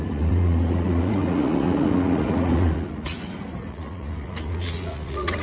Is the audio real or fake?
fake